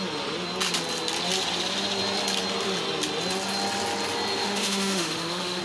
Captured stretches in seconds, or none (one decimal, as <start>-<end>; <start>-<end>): 0.0-4.4